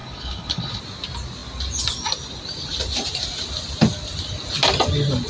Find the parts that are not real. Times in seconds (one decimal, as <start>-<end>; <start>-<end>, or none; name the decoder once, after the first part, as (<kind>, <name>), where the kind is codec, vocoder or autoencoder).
0.0-0.8 (codec, HILCodec)